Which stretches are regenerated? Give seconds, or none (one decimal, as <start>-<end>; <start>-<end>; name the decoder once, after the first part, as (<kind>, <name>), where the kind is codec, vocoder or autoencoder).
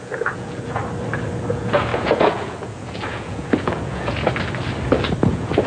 0.0-0.8 (vocoder, Vocos); 1.5-4.3; 5.2-5.7